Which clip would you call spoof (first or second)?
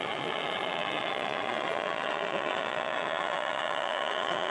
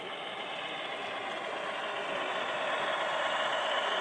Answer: first